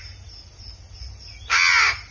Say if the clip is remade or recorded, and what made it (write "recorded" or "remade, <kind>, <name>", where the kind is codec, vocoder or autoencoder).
recorded